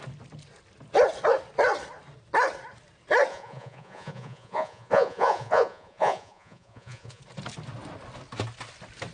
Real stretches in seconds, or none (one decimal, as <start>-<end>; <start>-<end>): 0.0-3.3; 7.2-9.1